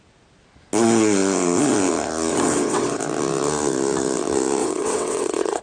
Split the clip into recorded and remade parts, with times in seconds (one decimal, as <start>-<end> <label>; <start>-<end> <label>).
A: 0.0-2.3 recorded; 2.3-3.0 remade; 3.0-4.6 recorded; 4.6-5.6 remade